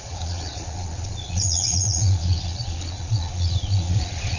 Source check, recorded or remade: remade